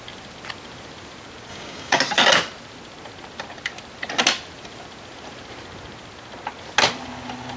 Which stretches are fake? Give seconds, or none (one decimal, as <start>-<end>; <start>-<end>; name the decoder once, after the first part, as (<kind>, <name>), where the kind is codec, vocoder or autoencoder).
1.5-2.0 (codec, DAC)